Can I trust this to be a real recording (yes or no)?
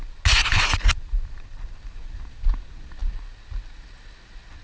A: yes